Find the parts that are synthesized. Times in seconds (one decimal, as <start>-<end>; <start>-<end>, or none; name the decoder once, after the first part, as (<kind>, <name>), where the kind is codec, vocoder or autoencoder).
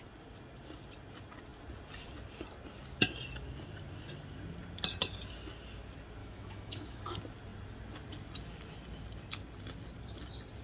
6.2-7.0 (autoencoder, DAC-VAE)